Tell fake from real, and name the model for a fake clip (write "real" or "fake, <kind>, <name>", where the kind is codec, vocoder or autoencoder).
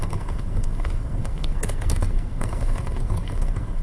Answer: fake, codec, SNAC